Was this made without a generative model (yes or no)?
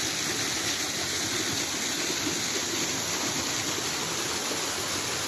yes